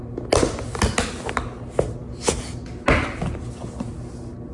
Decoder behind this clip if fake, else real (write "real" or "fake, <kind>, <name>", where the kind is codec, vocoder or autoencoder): real